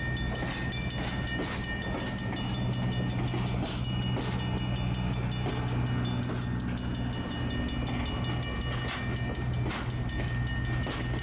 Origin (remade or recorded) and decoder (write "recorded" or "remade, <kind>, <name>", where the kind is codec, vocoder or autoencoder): recorded